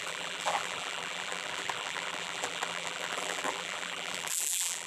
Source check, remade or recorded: remade